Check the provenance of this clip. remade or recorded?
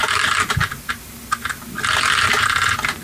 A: recorded